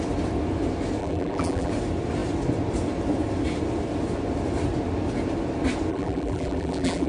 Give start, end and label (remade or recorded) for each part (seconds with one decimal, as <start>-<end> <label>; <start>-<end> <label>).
0.0-1.0 recorded; 1.0-1.7 remade; 1.7-5.9 recorded; 5.9-7.1 remade